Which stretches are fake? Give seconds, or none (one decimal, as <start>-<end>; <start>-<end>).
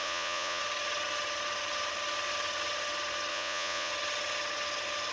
0.0-0.6; 3.3-3.9